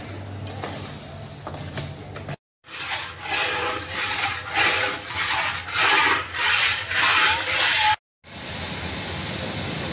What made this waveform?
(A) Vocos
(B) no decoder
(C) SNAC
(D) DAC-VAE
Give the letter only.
B